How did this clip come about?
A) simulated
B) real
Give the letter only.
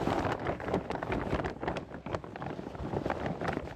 B